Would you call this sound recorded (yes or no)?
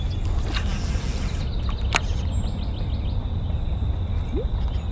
yes